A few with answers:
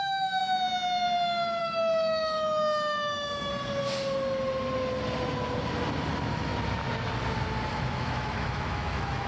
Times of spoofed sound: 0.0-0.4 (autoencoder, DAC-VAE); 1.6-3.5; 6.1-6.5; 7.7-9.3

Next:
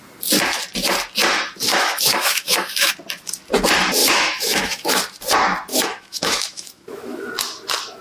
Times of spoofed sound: 1.7-2.9 (autoencoder, DAC-VAE); 4.0-4.9; 5.7-7.3

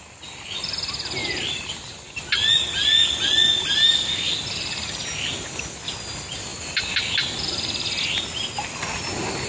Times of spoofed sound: none

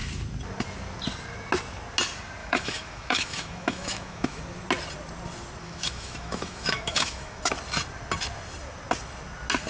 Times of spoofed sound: 2.4-4.4 (autoencoder, DAC-VAE); 5.6-7.4

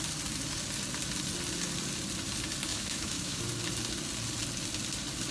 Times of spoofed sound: 2.7-3.4 (autoencoder, DAC-VAE)

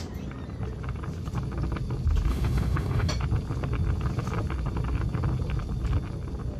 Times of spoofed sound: 2.3-3.1 (autoencoder, DAC-VAE)

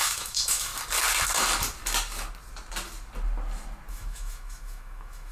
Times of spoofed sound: 0.0-0.7 (autoencoder, DAC-VAE); 3.9-5.3

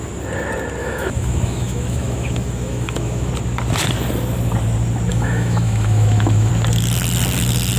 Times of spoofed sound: 0.8-3.3 (autoencoder, DAC-VAE); 5.1-6.5